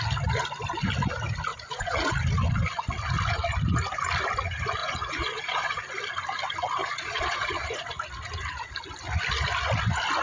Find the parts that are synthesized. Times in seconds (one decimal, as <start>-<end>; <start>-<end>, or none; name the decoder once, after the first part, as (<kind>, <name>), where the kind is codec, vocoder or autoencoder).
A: 1.5-2.1 (vocoder, Vocos); 4.8-5.9; 6.8-7.9